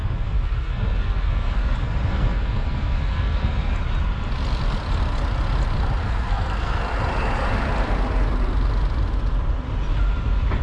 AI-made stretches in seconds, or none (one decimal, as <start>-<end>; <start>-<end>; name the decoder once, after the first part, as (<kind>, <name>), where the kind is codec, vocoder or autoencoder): 0.0-3.7 (codec, SNAC); 6.0-6.8

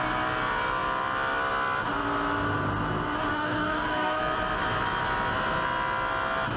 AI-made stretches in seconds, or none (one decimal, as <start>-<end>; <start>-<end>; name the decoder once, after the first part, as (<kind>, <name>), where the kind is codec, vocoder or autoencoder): 3.3-4.2 (codec, DAC)

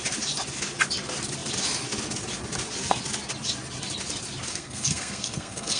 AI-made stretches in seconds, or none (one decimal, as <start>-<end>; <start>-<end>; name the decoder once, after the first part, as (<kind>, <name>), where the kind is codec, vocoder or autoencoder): 4.5-5.8 (codec, SNAC)

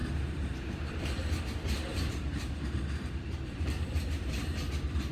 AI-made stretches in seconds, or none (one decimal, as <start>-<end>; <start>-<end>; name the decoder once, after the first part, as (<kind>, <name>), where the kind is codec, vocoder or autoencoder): 0.0-1.0 (vocoder, BigVGAN v2); 1.9-4.4

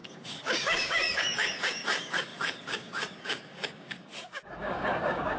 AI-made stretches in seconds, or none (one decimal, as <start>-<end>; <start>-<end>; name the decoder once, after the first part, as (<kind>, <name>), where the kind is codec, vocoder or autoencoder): 0.0-5.4 (codec, DAC)

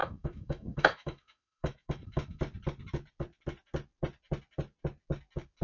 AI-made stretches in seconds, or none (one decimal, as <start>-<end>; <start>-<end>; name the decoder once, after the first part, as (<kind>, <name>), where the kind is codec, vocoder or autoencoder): 0.0-2.4 (autoencoder, DAC-VAE)